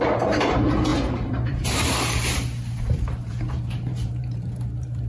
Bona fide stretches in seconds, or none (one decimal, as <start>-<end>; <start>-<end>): none